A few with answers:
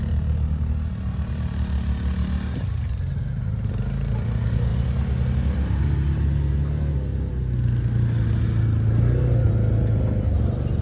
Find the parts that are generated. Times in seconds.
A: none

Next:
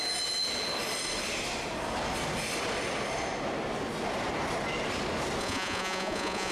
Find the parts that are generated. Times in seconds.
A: 5.4-6.5 (vocoder, Vocos)

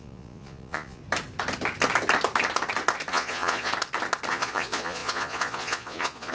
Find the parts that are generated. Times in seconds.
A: 0.0-1.0 (vocoder, Vocos); 3.1-3.7; 4.3-6.3

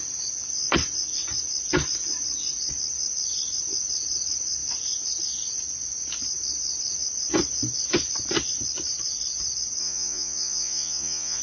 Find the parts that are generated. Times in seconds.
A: 9.8-11.4 (vocoder, Vocos)

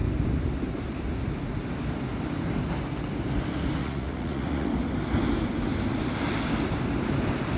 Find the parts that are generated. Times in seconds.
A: 3.8-4.7 (vocoder, Vocos)

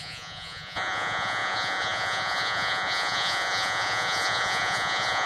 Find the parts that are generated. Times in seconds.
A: 0.0-5.3 (vocoder, Vocos)

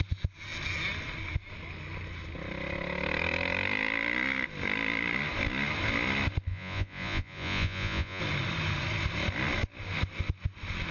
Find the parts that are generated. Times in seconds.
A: 6.5-8.2 (vocoder, Vocos)